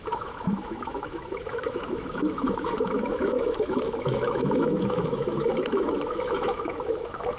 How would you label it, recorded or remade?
remade